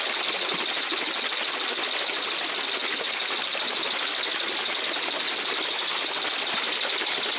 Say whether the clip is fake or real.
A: real